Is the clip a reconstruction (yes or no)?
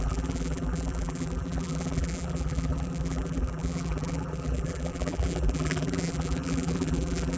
yes